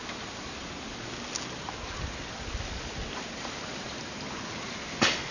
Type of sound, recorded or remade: recorded